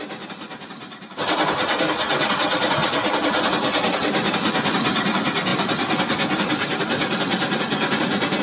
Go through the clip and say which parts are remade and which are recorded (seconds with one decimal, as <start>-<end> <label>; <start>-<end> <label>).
0.0-2.8 recorded; 2.8-3.4 remade; 3.4-8.4 recorded